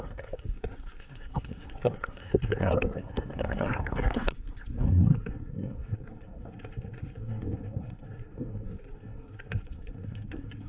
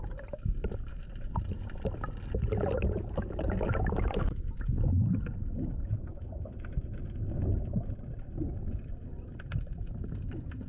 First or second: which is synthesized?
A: first